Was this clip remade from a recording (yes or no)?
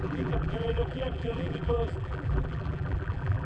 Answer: yes